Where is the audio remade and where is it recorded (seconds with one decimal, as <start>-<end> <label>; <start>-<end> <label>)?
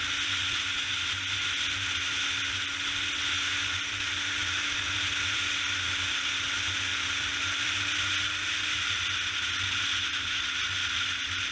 0.0-4.4 recorded; 4.4-5.5 remade; 5.5-6.9 recorded; 6.9-7.8 remade; 7.8-11.5 recorded